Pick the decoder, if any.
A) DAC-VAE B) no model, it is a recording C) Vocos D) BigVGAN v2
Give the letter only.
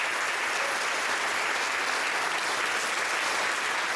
B